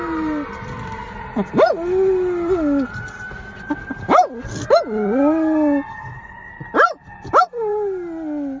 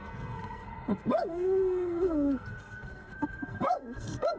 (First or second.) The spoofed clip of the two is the second